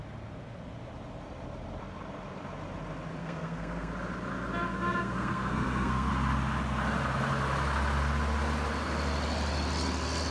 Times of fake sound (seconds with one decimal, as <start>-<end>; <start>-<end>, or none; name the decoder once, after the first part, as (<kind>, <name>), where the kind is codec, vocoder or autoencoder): 3.2-3.9 (codec, SNAC); 4.7-6.1